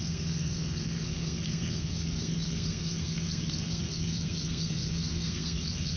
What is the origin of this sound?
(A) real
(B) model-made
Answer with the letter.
B